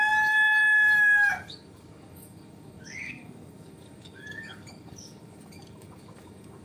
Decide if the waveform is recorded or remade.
remade